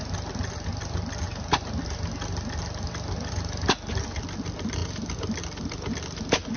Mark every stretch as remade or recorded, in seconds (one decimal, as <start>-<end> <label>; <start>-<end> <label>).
0.0-6.6 recorded